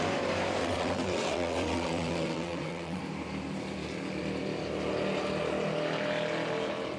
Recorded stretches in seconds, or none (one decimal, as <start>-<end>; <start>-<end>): 0.0-0.6; 3.0-7.0